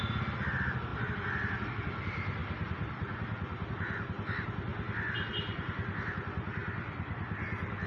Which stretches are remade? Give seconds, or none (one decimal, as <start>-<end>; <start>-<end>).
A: none